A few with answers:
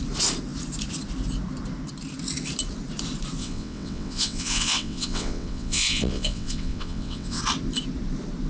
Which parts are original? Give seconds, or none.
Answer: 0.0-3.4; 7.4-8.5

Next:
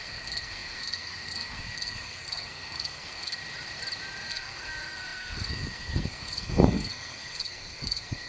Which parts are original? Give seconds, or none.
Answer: 3.4-4.3

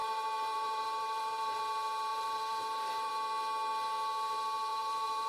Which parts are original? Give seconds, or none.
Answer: 1.6-2.1; 3.1-4.7

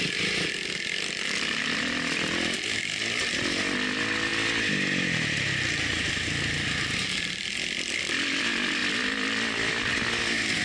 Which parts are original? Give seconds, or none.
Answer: 0.0-10.6

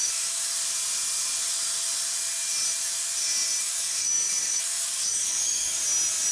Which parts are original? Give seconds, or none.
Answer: 0.5-3.6; 5.8-6.3

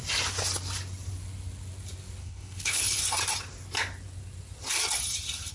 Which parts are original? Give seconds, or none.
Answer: 0.0-2.2; 3.0-5.5

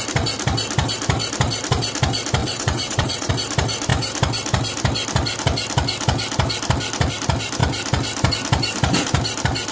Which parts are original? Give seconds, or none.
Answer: 0.0-2.4; 3.3-9.7